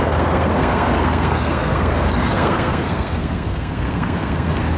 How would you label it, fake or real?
fake